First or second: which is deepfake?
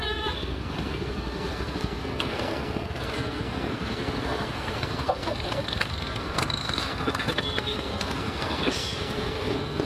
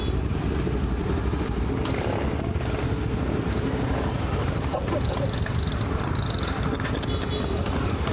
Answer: first